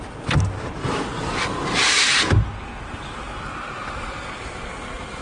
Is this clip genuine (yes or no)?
yes